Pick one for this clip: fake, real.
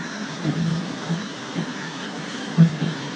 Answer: fake